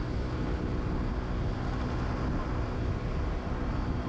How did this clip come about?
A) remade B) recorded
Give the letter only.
B